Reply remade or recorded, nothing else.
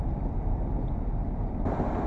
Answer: recorded